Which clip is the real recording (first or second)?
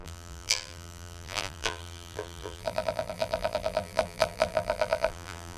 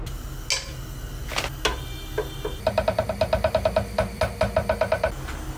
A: second